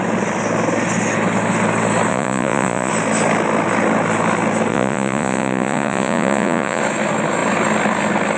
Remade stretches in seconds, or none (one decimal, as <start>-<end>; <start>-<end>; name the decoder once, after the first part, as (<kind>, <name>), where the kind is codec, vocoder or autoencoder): 2.1-2.9 (vocoder, Vocos); 4.7-6.8